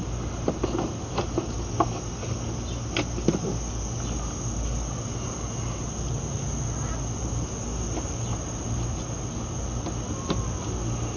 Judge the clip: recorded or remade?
recorded